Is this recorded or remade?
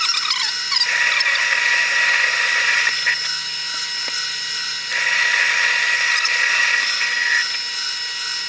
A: recorded